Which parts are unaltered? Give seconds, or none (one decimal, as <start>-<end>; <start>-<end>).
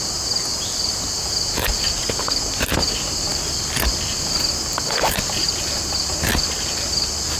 0.0-0.5; 1.9-3.3; 6.1-7.4